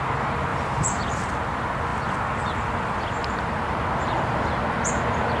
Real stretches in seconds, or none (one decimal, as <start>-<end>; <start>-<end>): 0.0-0.5; 1.3-5.4